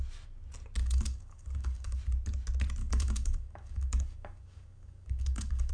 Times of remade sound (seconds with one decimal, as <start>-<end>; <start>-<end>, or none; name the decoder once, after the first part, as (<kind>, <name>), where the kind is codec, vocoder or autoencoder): 0.8-2.0 (codec, DAC); 2.8-5.7